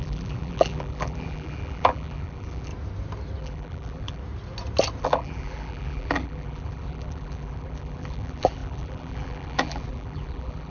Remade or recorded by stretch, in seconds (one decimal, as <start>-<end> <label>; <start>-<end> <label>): 0.0-2.7 remade; 2.7-3.4 recorded; 3.4-4.2 remade; 4.2-5.0 recorded; 5.0-10.7 remade